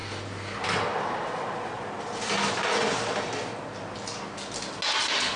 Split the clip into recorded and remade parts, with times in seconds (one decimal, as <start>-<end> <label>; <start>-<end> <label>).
0.0-5.4 recorded